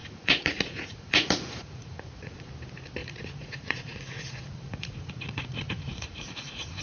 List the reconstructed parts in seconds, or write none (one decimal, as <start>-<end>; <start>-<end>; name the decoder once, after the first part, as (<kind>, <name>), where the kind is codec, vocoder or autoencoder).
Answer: 0.0-2.5 (vocoder, Vocos); 3.0-6.8